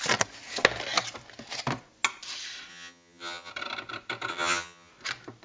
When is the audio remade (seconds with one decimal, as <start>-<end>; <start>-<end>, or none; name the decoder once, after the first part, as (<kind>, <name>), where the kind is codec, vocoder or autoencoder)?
2.7-3.5 (vocoder, HiFi-GAN); 4.3-4.9